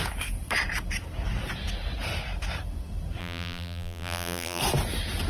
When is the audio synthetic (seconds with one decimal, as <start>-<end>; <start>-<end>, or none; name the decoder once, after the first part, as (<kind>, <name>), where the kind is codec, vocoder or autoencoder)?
3.2-4.6 (vocoder, BigVGAN v2)